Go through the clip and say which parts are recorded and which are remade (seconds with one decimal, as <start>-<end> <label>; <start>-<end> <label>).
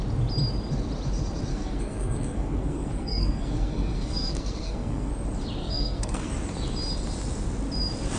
0.0-1.5 recorded; 1.5-5.1 remade; 5.1-5.6 recorded; 5.6-6.3 remade; 6.3-8.2 recorded